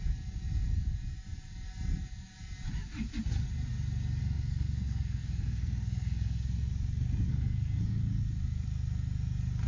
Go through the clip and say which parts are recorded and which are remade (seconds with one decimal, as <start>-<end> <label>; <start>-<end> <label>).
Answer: 0.0-4.2 recorded; 4.2-6.7 remade; 6.7-7.3 recorded; 7.3-8.2 remade; 8.2-9.7 recorded